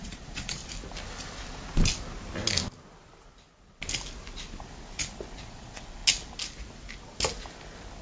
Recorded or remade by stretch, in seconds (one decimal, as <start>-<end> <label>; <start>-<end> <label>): 0.0-0.6 remade; 0.6-5.4 recorded; 5.4-6.0 remade; 6.0-8.0 recorded